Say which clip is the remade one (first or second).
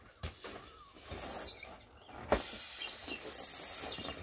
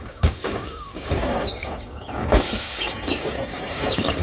second